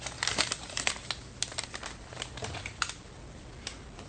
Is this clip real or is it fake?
real